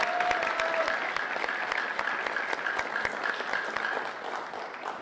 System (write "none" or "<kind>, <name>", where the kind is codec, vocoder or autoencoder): none